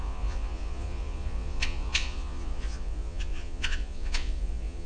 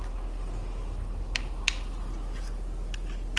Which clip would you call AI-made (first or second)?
first